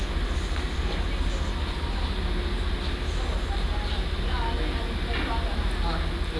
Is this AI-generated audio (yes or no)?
no